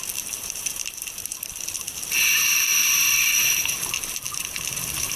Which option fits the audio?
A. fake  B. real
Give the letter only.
A